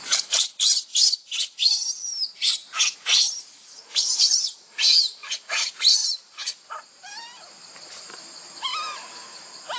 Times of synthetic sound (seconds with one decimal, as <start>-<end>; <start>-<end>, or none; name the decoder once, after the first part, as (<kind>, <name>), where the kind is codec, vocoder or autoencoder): none